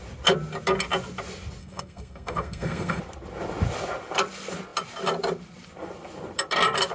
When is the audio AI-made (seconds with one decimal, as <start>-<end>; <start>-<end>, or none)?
1.6-3.0